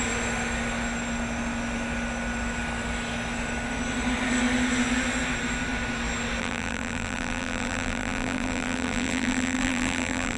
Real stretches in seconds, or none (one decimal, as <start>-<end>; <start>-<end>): 0.0-6.4